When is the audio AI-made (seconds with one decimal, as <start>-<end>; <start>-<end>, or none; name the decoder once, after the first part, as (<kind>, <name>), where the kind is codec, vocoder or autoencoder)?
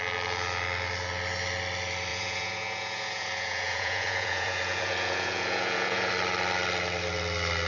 2.1-6.1 (vocoder, Vocos)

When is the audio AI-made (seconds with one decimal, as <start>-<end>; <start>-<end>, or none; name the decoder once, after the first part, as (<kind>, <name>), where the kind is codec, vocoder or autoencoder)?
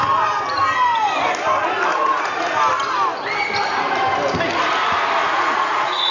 1.9-2.6 (vocoder, Vocos); 5.2-6.1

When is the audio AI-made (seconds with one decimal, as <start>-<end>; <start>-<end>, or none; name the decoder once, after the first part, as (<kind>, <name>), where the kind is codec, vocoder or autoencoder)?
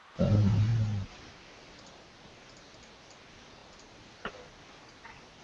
none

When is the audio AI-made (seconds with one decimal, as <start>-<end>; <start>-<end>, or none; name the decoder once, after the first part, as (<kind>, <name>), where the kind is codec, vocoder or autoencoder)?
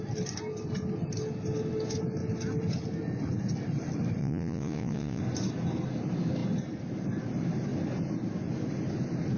4.2-5.2 (vocoder, Vocos)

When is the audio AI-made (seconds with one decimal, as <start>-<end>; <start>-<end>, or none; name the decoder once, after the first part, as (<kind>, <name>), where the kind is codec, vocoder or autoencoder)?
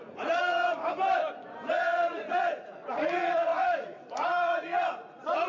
0.0-0.6 (vocoder, Vocos); 1.7-5.5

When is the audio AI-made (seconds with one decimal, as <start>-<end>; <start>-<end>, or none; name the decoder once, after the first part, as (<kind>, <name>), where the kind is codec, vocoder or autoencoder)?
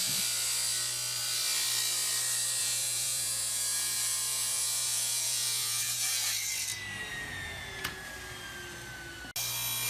2.6-6.3 (vocoder, Vocos); 7.1-8.1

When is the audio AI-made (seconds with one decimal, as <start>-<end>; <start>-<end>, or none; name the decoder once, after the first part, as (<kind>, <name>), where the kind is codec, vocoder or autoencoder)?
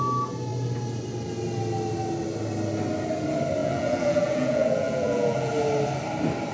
3.6-5.5 (vocoder, Vocos)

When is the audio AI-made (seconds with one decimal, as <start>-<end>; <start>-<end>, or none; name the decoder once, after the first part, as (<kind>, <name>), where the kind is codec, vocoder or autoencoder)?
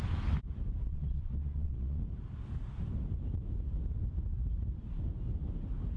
0.9-2.0 (vocoder, Vocos)